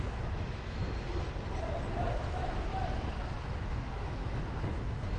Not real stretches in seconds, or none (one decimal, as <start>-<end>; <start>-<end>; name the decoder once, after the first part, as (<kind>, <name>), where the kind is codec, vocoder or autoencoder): 0.0-0.8 (autoencoder, DAC-VAE); 2.2-5.2